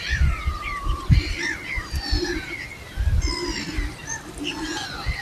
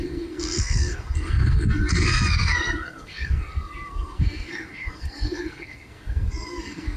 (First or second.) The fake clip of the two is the second